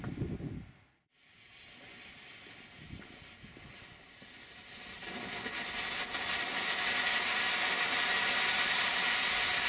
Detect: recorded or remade recorded